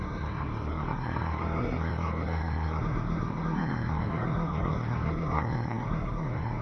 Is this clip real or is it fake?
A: fake